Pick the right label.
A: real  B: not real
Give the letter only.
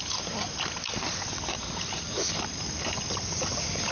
A